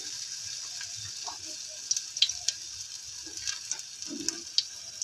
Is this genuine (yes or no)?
yes